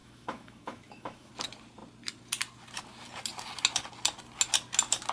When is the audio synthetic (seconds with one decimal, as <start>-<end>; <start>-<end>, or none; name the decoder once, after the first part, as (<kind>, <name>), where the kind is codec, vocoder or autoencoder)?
0.0-1.3 (autoencoder, DAC-VAE)